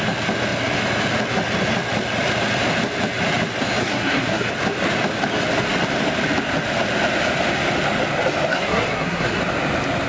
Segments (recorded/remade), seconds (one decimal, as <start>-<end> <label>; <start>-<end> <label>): 0.0-3.8 recorded; 3.8-4.5 remade; 4.5-8.5 recorded; 8.5-9.4 remade; 9.4-10.1 recorded